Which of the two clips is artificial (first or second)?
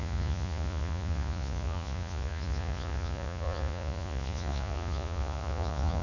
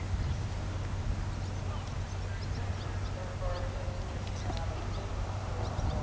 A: first